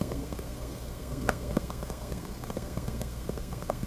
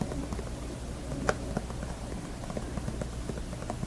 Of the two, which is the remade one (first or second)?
first